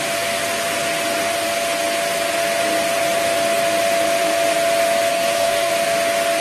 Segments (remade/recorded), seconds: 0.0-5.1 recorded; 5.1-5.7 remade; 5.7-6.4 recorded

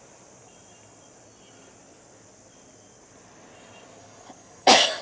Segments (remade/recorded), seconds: 0.0-4.0 recorded; 4.0-5.0 remade

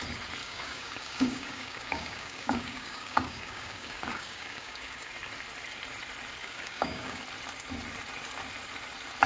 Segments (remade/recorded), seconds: 0.0-0.4 recorded; 0.4-5.1 remade; 5.1-6.4 recorded; 6.4-7.2 remade; 7.2-9.3 recorded

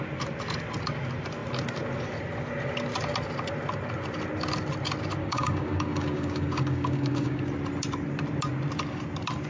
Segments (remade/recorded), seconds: 0.0-5.2 recorded; 5.2-7.4 remade; 7.4-9.5 recorded

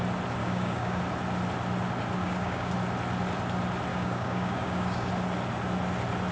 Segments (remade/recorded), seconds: 0.0-0.4 recorded; 0.4-1.0 remade; 1.0-2.2 recorded; 2.2-2.7 remade; 2.7-3.9 recorded; 3.9-5.1 remade; 5.1-6.3 recorded

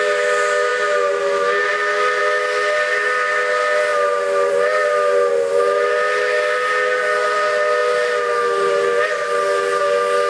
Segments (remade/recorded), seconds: 0.0-10.3 recorded

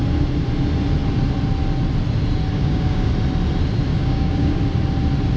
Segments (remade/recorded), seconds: 0.0-2.5 recorded; 2.5-3.1 remade; 3.1-3.9 recorded; 3.9-4.6 remade; 4.6-5.4 recorded